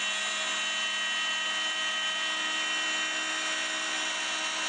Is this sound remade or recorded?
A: recorded